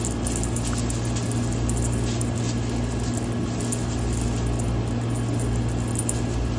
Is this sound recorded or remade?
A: recorded